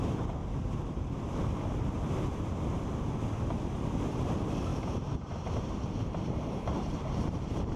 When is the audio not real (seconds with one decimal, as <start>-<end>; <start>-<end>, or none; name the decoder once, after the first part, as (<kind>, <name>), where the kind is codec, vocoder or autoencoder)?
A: 0.4-1.5 (vocoder, BigVGAN v2); 4.7-7.8